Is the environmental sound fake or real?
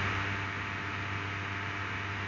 real